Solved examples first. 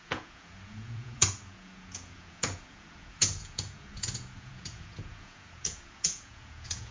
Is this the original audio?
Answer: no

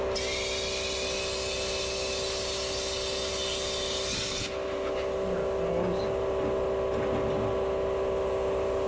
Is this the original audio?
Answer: yes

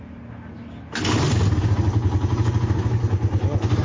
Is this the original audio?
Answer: yes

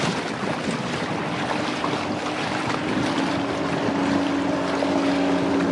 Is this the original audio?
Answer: yes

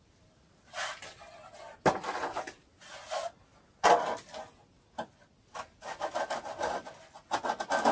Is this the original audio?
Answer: yes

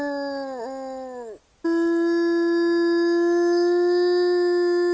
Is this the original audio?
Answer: yes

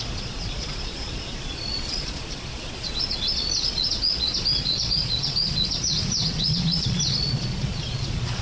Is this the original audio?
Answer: no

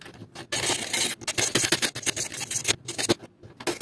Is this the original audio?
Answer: yes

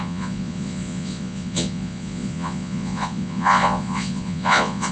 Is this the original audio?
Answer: no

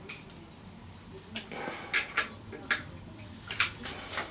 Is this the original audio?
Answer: yes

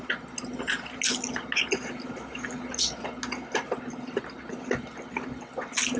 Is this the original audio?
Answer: yes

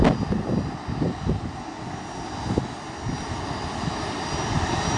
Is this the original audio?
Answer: yes